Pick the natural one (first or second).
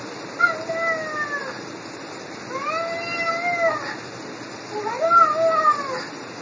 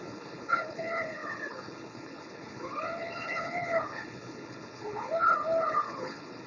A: first